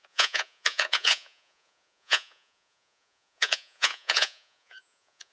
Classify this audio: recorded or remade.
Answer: remade